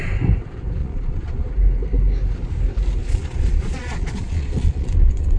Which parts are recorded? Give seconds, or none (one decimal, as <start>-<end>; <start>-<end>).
0.0-0.8; 1.5-3.0